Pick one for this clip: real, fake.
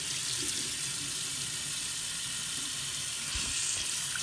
real